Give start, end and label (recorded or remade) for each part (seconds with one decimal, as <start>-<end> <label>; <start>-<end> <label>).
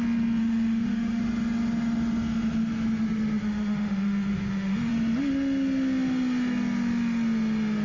0.0-0.4 recorded; 0.4-1.2 remade; 1.2-3.4 recorded; 3.4-4.9 remade; 4.9-7.8 recorded